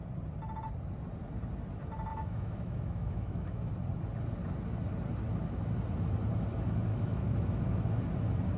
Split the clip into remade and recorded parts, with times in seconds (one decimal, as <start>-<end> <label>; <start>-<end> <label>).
0.0-2.1 recorded; 2.1-3.7 remade; 3.7-6.9 recorded; 6.9-8.0 remade; 8.0-8.6 recorded